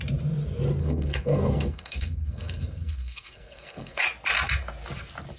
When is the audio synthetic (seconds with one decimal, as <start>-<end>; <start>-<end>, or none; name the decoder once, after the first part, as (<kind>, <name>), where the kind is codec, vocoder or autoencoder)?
0.8-4.0 (codec, SNAC)